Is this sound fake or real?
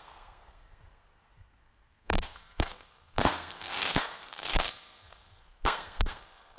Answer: fake